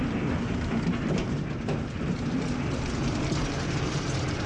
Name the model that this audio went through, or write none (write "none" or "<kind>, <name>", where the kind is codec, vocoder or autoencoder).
vocoder, BigVGAN v2